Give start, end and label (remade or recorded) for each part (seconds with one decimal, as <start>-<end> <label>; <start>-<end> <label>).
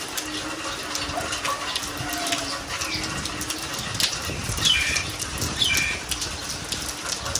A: 0.0-3.9 recorded; 3.9-6.1 remade; 6.1-7.4 recorded